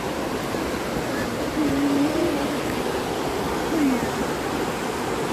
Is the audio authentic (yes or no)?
yes